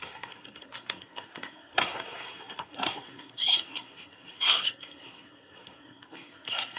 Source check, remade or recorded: remade